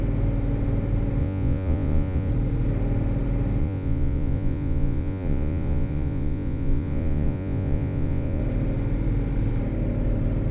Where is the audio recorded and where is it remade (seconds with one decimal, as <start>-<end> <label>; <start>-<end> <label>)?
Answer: 0.0-1.2 recorded; 1.2-2.3 remade; 2.3-3.6 recorded; 3.6-8.4 remade; 8.4-10.5 recorded